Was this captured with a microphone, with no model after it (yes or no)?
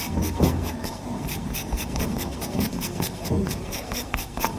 no